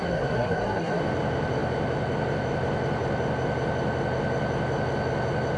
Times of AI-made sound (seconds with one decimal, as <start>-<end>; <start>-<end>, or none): 0.0-1.0